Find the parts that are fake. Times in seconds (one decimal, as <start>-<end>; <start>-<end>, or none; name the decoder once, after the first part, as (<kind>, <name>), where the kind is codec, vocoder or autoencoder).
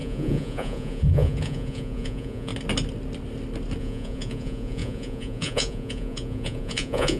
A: 0.0-2.5 (vocoder, Vocos); 3.8-7.2